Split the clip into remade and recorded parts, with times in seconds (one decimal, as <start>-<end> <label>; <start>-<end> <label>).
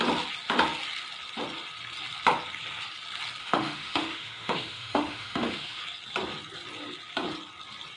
0.0-3.4 recorded; 3.4-5.8 remade; 5.8-8.0 recorded